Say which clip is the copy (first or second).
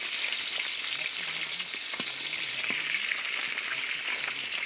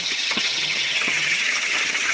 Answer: second